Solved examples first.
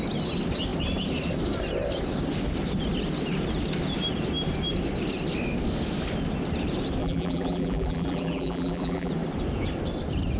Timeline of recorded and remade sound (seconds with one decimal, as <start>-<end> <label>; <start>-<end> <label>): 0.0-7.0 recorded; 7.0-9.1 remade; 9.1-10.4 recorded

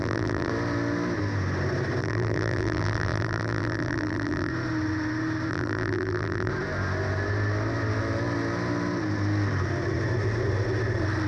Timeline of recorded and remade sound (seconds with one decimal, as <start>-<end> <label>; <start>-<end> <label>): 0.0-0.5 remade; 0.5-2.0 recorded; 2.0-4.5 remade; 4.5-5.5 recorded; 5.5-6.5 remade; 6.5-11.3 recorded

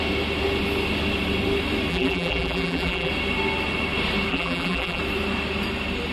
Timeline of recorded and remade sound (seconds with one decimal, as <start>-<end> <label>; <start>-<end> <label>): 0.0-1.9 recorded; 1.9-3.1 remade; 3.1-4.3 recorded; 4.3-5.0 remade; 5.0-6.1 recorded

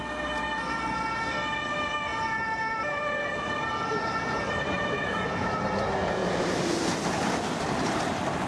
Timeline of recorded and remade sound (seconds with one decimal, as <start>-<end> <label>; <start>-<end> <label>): 0.0-2.1 recorded; 2.1-5.7 remade; 5.7-8.5 recorded

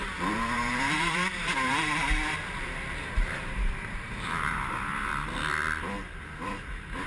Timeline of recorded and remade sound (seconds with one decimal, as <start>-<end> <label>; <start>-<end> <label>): 0.0-5.1 remade; 5.1-6.2 recorded; 6.2-7.1 remade

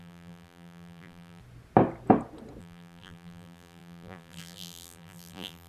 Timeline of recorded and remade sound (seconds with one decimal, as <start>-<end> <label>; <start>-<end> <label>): 0.0-1.4 remade; 1.4-2.6 recorded; 2.6-5.7 remade

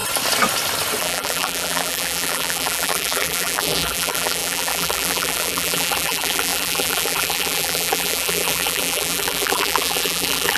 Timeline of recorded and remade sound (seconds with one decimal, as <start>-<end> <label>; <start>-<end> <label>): 0.0-1.0 recorded; 1.0-10.6 remade

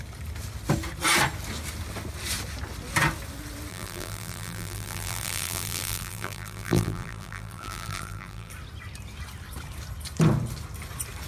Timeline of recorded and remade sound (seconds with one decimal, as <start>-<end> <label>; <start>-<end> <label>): 0.0-3.7 recorded; 3.7-8.5 remade; 8.5-11.3 recorded